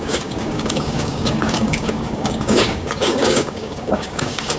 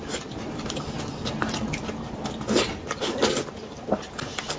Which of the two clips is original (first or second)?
second